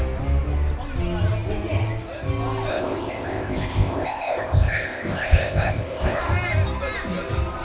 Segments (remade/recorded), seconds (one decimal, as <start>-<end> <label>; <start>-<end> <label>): 0.0-2.7 recorded; 2.7-6.2 remade; 6.2-7.6 recorded